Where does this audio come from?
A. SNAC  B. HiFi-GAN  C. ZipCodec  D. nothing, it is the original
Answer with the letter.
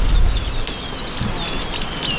D